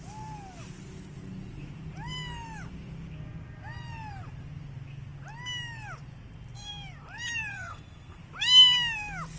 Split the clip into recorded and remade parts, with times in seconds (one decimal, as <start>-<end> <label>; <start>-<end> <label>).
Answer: 0.0-7.5 recorded; 7.5-8.2 remade; 8.2-9.4 recorded

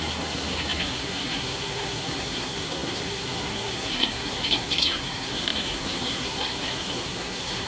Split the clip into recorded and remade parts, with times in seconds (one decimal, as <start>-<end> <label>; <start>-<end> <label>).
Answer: 0.0-7.7 remade